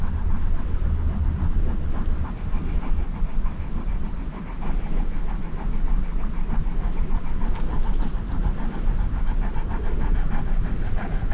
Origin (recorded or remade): recorded